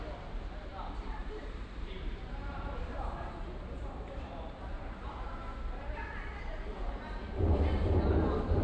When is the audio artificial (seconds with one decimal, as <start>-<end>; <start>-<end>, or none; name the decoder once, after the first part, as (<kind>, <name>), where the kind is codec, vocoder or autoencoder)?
0.0-5.4 (vocoder, BigVGAN v2); 6.8-8.6

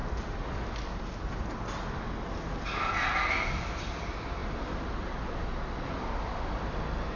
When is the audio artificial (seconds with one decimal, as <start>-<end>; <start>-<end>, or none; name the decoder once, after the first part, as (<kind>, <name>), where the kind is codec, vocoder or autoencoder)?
4.4-5.4 (vocoder, BigVGAN v2)

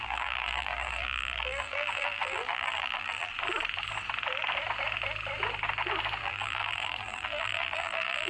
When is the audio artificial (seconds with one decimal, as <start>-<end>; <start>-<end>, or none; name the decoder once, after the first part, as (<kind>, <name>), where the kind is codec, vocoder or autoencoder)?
0.0-3.3 (vocoder, BigVGAN v2); 6.2-8.3

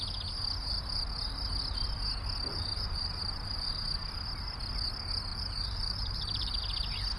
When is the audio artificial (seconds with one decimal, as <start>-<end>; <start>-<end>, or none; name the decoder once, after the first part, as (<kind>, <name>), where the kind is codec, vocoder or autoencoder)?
2.5-3.7 (vocoder, BigVGAN v2); 5.3-6.6

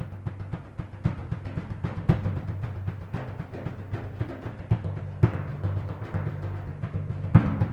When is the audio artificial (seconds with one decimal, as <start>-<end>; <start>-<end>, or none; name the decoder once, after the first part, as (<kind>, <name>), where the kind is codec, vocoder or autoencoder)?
1.2-4.3 (vocoder, BigVGAN v2); 5.5-6.1; 6.7-7.7